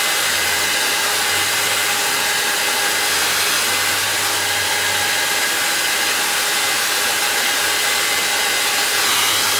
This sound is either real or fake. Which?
real